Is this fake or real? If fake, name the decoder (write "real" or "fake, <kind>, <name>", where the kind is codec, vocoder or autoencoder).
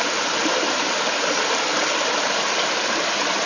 real